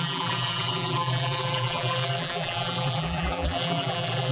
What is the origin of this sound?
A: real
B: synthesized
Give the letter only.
B